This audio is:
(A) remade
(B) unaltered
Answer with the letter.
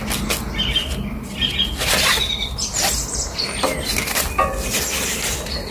B